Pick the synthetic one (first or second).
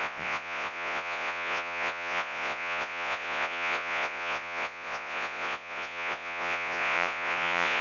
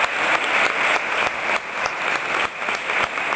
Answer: first